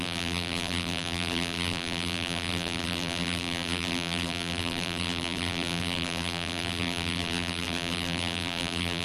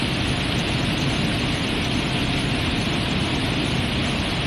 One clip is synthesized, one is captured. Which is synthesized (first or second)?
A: first